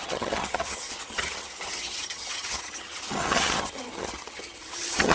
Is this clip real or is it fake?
fake